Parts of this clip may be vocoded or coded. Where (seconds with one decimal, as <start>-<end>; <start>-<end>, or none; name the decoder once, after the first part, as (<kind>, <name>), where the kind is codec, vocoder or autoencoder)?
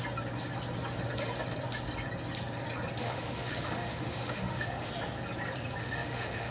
3.0-4.9 (autoencoder, DAC-VAE); 5.8-6.5